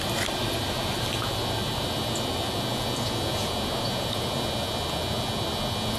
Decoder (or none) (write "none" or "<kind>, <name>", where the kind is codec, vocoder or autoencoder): none